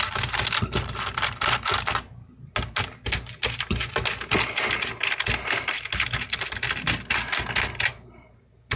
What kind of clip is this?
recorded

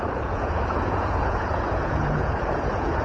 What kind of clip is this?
remade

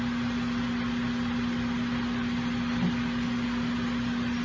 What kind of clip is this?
recorded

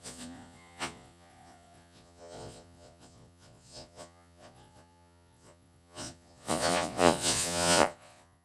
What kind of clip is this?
remade